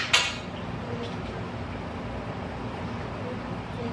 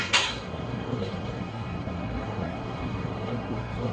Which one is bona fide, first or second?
first